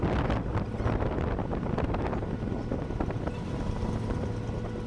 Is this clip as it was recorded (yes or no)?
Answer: yes